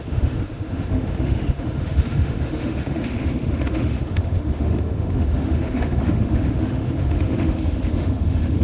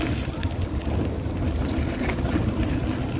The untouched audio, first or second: second